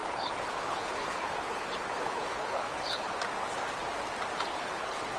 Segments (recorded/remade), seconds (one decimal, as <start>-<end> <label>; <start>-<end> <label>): 0.0-3.1 remade; 3.1-4.5 recorded; 4.5-5.2 remade